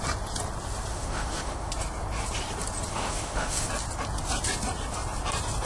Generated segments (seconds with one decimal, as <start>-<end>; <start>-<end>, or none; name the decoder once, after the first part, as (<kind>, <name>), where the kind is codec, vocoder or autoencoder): 0.9-1.7 (autoencoder, DAC-VAE); 2.9-3.7